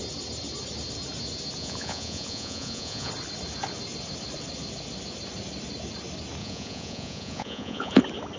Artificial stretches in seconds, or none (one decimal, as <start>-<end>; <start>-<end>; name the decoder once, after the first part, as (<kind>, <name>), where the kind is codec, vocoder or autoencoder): 1.6-3.1 (vocoder, Vocos); 6.4-8.0